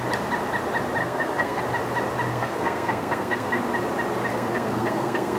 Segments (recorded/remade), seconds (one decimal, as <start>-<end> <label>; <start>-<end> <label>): 0.0-1.0 recorded; 1.0-1.6 remade; 1.6-2.3 recorded; 2.3-3.6 remade; 3.6-4.3 recorded; 4.3-5.4 remade